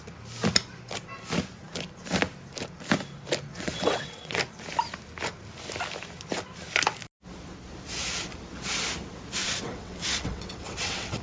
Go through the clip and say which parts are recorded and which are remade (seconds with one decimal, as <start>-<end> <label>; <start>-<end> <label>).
0.0-3.5 recorded; 3.5-4.4 remade; 4.4-9.4 recorded; 9.4-11.2 remade